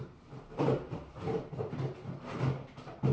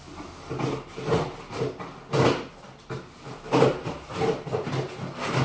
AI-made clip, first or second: first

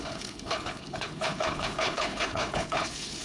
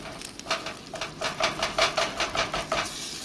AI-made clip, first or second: first